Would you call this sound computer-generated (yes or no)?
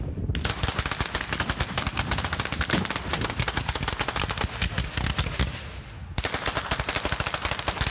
no